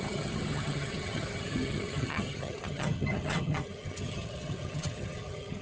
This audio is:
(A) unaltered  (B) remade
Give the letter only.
B